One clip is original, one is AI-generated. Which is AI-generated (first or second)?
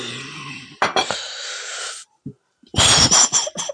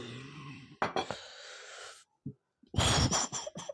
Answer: first